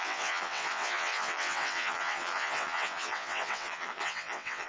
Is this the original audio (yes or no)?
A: no